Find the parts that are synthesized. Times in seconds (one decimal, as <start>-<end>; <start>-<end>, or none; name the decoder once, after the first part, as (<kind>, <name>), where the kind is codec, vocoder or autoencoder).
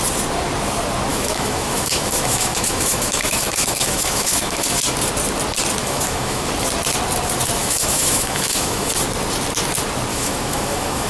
1.1-4.8 (autoencoder, DAC-VAE); 5.8-6.5; 7.6-8.9; 10.1-11.1